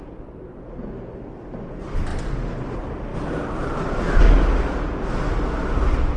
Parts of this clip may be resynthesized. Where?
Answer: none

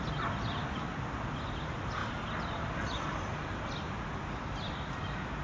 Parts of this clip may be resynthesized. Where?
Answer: none

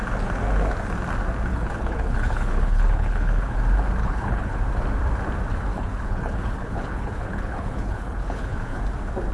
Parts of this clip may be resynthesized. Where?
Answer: 1.5-3.6; 4.0-4.6; 5.5-8.8

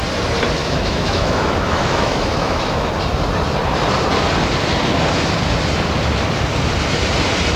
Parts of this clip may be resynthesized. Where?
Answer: 0.6-2.9

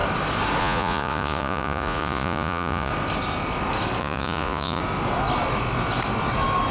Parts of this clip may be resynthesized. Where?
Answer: 0.6-2.9; 4.0-4.8

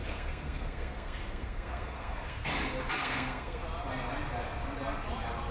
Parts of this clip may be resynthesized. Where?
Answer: 0.0-2.5; 3.0-3.6